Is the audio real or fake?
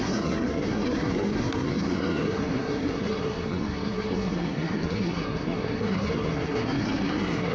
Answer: fake